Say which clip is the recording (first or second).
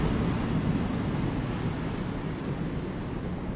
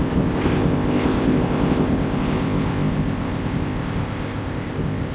first